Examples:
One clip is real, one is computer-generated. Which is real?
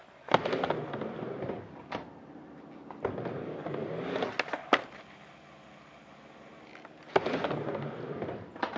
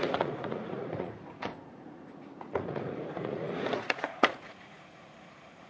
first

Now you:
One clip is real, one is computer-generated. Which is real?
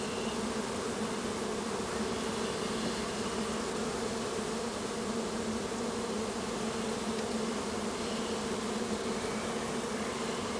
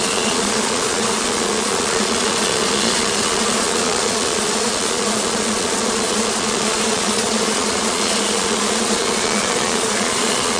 first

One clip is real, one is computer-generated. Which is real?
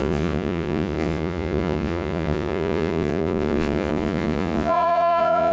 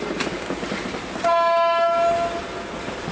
second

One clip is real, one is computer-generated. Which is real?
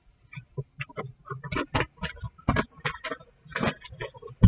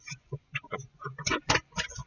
first